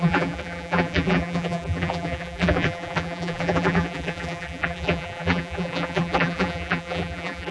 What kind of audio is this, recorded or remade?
remade